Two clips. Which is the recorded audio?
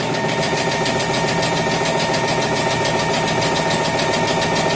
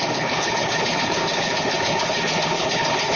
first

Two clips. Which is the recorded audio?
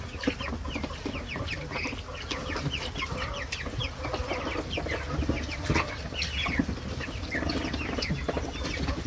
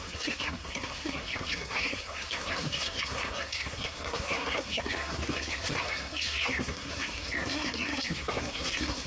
first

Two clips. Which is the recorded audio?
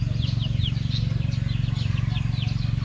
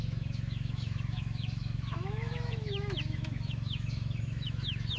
first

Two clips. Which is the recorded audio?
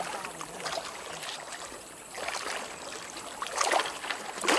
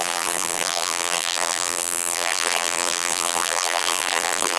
first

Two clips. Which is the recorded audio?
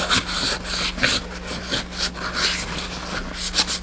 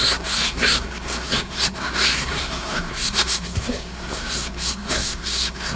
first